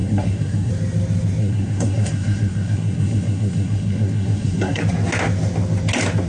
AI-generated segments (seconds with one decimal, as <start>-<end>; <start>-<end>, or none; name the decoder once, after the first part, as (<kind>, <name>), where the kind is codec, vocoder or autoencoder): 0.0-0.7 (codec, SNAC); 1.4-4.8